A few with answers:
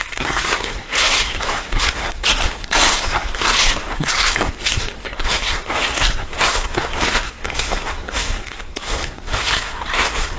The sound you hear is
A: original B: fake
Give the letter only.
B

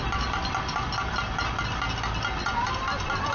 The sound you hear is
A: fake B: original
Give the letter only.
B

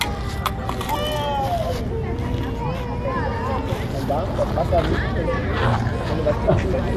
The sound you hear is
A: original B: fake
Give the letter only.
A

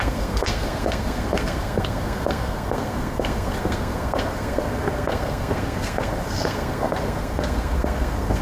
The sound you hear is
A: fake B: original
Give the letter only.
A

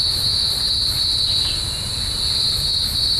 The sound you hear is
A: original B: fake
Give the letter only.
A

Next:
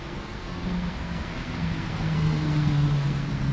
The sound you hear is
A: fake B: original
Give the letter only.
A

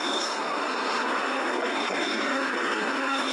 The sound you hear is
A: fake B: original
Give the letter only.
A